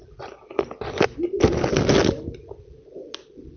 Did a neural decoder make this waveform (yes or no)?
no